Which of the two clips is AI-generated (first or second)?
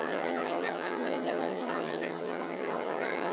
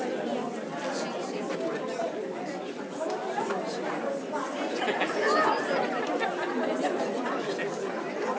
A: first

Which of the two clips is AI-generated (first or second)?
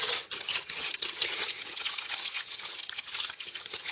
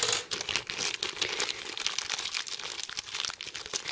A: first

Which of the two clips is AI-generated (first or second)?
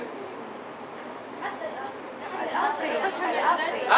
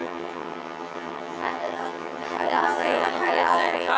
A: second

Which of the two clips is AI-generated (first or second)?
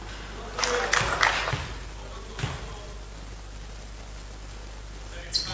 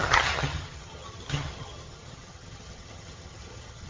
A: second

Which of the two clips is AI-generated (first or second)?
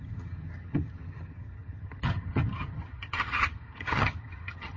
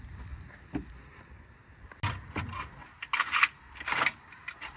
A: first